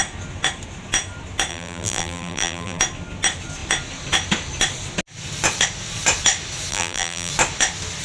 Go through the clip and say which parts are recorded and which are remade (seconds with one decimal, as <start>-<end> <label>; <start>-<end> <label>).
0.0-1.5 recorded; 1.5-2.8 remade; 2.8-6.7 recorded; 6.7-7.3 remade; 7.3-8.0 recorded